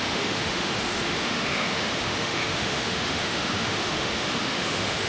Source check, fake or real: fake